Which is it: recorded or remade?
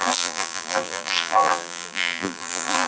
remade